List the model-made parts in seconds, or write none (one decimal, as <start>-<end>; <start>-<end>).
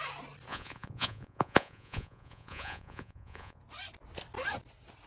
0.5-3.6